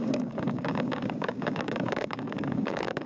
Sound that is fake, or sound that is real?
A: fake